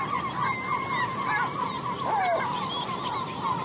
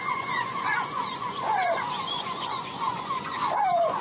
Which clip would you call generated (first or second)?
second